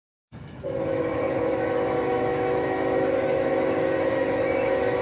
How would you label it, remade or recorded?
remade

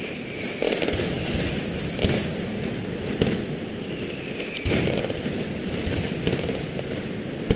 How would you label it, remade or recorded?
recorded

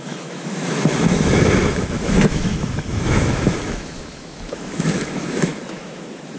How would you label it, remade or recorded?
remade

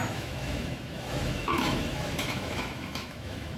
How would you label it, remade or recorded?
remade